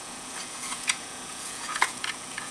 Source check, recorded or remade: remade